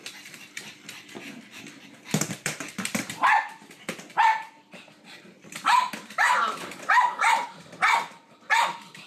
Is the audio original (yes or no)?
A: no